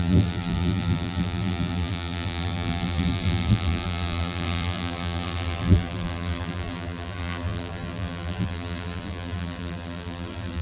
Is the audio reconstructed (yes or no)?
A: yes